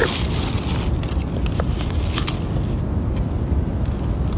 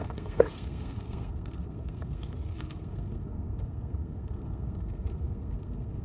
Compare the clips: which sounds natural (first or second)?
first